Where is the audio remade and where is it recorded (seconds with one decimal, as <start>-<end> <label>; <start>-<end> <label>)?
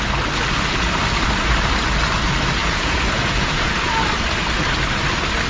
0.0-2.6 recorded; 2.6-3.8 remade; 3.8-5.5 recorded